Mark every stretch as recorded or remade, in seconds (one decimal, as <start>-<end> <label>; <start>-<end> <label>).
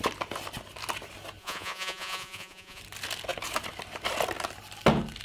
0.0-1.4 recorded; 1.4-2.8 remade; 2.8-5.2 recorded